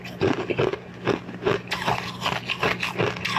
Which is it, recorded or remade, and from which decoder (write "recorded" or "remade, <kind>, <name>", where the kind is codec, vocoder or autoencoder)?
recorded